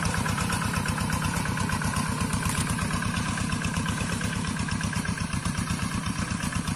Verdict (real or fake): fake